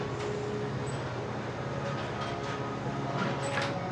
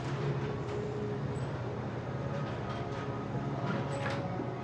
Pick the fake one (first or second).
second